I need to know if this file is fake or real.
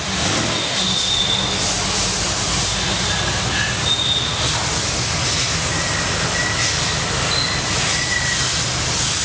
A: real